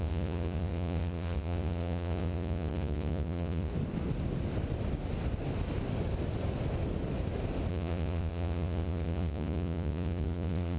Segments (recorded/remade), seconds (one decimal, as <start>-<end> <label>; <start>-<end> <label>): 0.0-3.7 remade; 3.7-7.7 recorded; 7.7-10.8 remade

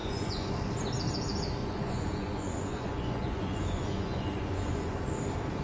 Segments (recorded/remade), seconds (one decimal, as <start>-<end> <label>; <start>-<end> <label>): 0.0-0.5 remade; 0.5-1.6 recorded; 1.6-5.0 remade; 5.0-5.6 recorded

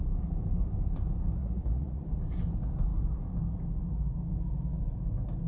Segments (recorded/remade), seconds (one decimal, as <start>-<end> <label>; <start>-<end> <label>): 0.0-1.4 recorded; 1.4-2.0 remade; 2.0-5.5 recorded

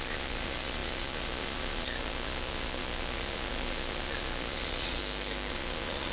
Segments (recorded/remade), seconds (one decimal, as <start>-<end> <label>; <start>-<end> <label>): 0.0-5.0 remade; 5.0-5.5 recorded; 5.5-6.1 remade